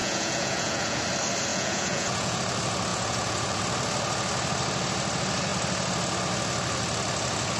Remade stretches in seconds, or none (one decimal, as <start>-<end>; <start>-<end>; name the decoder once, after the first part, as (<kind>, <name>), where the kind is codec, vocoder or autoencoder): 0.0-1.0 (vocoder, Vocos); 1.5-2.4; 2.9-3.6